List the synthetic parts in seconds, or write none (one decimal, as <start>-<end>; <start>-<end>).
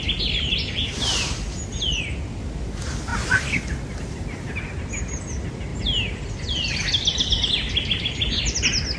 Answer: none